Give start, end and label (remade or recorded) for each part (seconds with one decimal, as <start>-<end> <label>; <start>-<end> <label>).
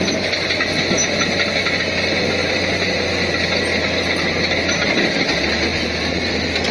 0.0-2.4 recorded; 2.4-3.1 remade; 3.1-5.7 recorded; 5.7-6.7 remade